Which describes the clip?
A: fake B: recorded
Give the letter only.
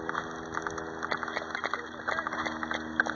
B